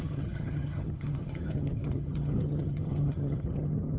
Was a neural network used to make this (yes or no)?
yes